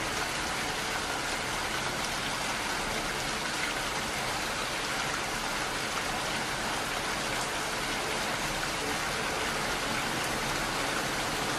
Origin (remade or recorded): recorded